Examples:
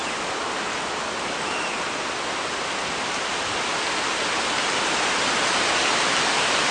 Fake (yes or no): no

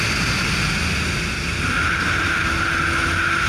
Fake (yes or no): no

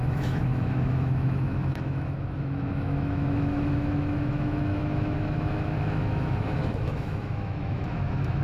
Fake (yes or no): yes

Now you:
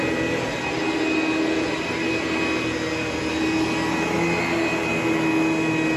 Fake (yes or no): no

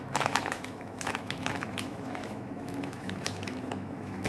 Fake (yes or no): yes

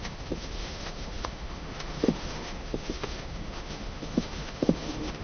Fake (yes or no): yes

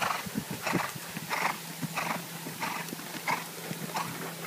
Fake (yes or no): no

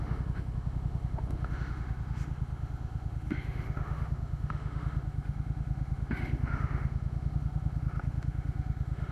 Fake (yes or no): yes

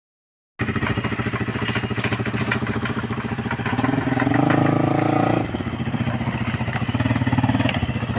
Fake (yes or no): no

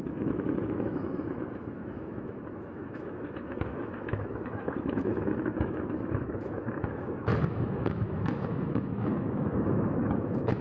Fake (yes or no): yes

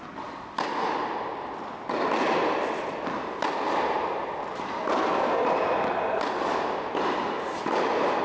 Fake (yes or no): no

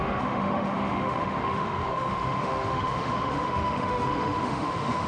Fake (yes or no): yes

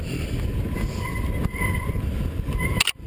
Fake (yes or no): no